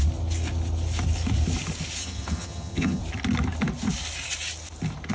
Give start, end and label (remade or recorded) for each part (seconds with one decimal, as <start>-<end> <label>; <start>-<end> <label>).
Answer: 0.0-2.0 recorded; 2.0-3.0 remade; 3.0-5.1 recorded